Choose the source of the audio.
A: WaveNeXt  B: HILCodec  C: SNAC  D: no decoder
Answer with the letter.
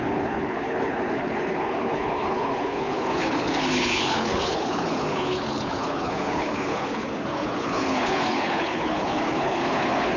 B